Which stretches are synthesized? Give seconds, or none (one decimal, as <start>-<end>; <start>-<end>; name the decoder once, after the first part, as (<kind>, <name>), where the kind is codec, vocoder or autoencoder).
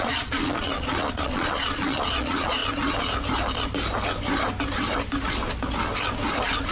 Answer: 0.0-2.6 (vocoder, Vocos)